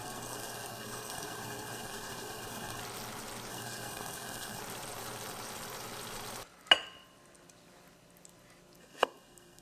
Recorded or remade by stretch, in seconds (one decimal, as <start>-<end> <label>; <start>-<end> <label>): 0.0-2.8 remade; 2.8-3.5 recorded; 3.5-4.6 remade; 4.6-8.8 recorded; 8.8-9.6 remade